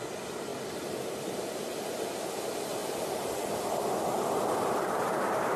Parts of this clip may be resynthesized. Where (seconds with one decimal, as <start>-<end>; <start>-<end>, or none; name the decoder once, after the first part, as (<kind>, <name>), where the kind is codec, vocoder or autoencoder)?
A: none